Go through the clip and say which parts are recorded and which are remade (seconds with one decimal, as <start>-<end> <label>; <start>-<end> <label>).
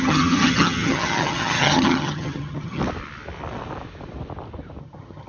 0.0-2.8 remade; 2.8-4.8 recorded; 4.8-5.3 remade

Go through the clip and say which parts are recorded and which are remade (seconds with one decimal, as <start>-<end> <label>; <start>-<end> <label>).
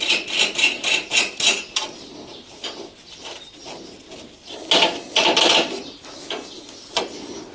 0.0-7.5 recorded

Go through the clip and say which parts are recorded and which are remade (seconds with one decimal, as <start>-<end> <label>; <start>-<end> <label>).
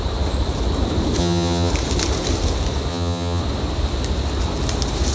0.0-1.2 recorded; 1.2-1.7 remade; 1.7-2.9 recorded; 2.9-3.4 remade; 3.4-5.1 recorded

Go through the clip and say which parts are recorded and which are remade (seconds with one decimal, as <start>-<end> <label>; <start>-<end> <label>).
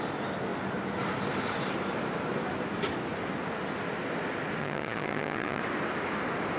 0.0-4.6 recorded; 4.6-5.6 remade; 5.6-6.6 recorded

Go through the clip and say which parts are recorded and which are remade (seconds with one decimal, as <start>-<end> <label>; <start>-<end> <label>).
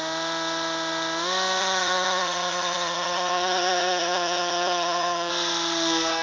0.0-1.6 recorded; 1.6-5.3 remade; 5.3-6.2 recorded